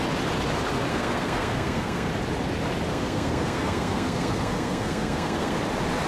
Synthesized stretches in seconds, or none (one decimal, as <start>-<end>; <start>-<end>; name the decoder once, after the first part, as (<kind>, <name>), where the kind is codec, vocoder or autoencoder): 0.9-2.1 (codec, SNAC); 2.9-5.6